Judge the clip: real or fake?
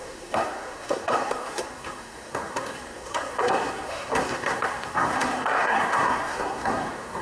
fake